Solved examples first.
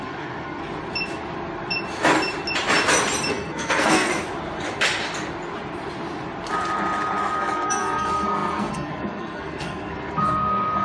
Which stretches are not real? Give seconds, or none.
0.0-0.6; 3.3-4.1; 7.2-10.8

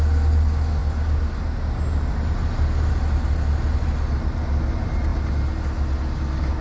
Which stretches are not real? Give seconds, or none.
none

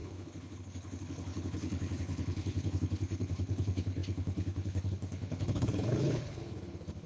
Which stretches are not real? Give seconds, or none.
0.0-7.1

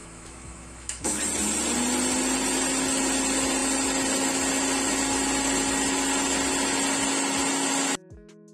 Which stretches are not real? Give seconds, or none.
0.0-1.2

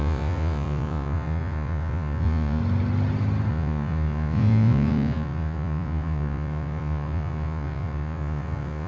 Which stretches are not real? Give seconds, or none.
0.0-2.6; 3.5-8.9

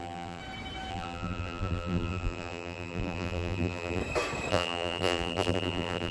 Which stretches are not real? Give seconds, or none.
0.0-0.4; 0.9-4.0; 4.5-6.1